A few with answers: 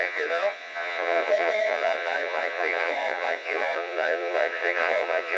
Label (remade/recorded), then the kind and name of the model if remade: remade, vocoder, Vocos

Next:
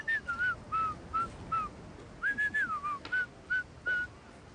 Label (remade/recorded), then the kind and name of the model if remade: recorded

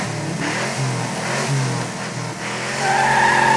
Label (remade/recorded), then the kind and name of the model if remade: recorded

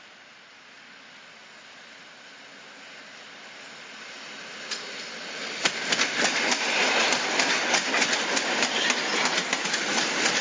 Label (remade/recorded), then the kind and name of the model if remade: recorded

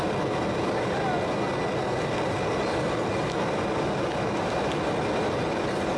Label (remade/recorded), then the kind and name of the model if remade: recorded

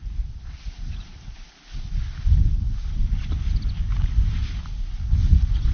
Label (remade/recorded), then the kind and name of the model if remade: recorded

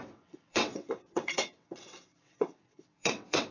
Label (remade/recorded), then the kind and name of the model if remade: remade, vocoder, WaveNeXt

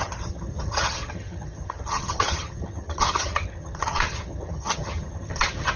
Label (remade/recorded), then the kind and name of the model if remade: remade, vocoder, HiFi-GAN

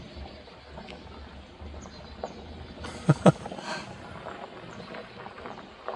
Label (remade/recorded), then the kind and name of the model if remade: recorded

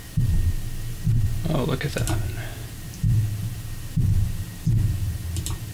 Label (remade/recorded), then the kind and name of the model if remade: recorded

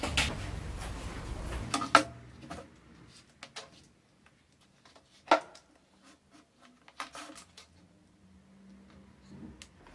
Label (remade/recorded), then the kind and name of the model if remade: recorded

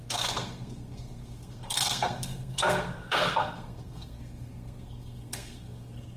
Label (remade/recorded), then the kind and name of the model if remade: remade, codec, SNAC